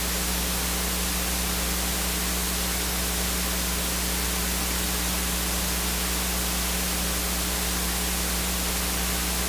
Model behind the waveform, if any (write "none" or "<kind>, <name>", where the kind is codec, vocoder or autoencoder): none